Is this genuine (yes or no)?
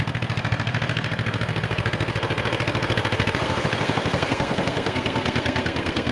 no